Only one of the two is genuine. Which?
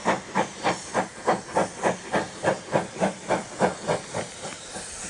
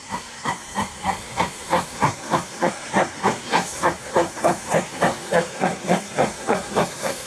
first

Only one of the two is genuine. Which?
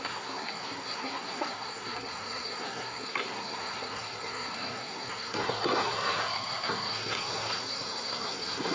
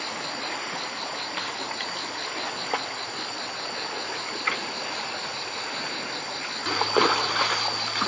second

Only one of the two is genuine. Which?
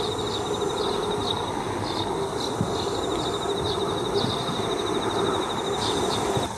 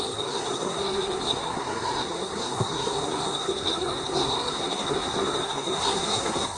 first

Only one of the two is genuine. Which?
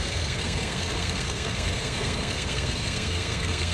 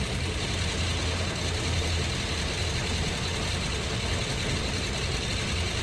second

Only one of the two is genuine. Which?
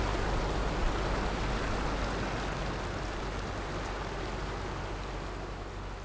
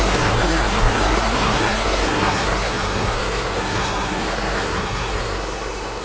first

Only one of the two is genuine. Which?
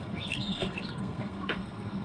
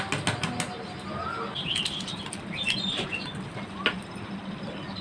second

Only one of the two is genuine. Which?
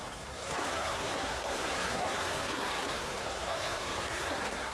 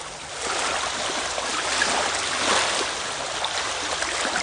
second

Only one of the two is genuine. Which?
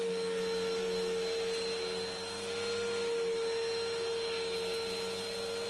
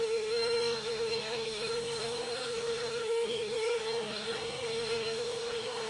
first